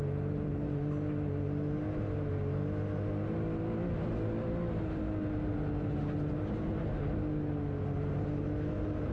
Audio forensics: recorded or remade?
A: recorded